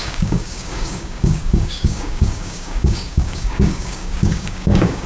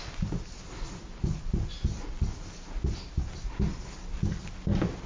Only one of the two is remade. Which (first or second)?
first